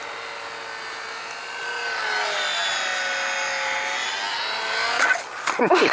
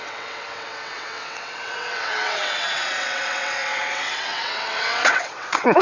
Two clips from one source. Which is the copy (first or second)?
second